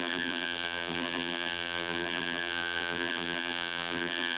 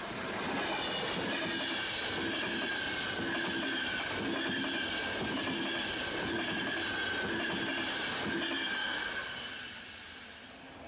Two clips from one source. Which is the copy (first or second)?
first